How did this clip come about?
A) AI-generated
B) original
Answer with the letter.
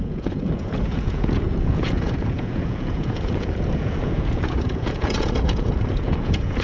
A